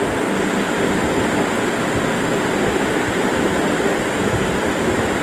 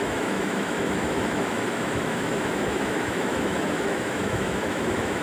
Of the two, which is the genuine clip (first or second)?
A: first